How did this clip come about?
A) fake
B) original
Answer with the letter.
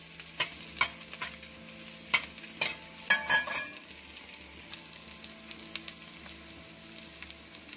B